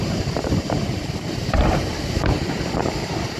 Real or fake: fake